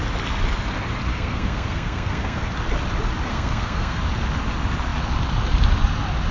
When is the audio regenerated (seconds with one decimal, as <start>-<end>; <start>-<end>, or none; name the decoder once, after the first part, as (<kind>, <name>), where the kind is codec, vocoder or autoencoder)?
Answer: 1.1-2.5 (codec, SNAC); 3.3-4.0